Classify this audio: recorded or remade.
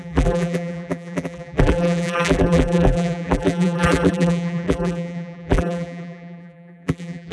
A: remade